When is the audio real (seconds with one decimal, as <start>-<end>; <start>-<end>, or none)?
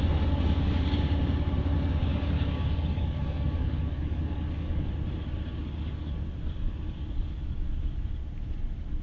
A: 0.0-2.1; 4.9-9.0